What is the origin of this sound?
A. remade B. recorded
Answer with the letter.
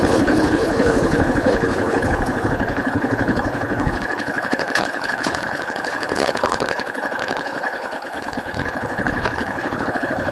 A